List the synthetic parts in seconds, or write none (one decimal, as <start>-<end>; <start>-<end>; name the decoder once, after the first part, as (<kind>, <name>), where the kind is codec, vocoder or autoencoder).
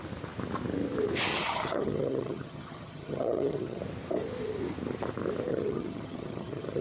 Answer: 1.3-3.8 (vocoder, HiFi-GAN); 5.5-6.8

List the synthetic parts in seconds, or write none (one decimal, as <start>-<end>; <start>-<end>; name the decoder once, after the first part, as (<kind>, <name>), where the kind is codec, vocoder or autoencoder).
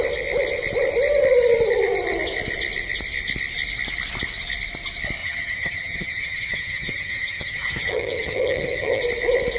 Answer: 5.2-9.0 (vocoder, HiFi-GAN)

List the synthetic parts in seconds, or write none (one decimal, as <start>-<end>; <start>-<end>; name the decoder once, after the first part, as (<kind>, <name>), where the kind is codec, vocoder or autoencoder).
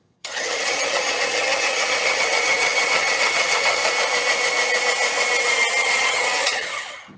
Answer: 0.0-3.8 (vocoder, HiFi-GAN); 5.8-7.2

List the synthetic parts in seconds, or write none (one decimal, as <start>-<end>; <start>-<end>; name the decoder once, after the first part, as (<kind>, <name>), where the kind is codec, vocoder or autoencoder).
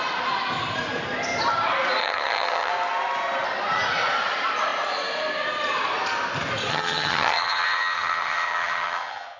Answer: 2.0-2.7 (vocoder, HiFi-GAN); 6.7-9.4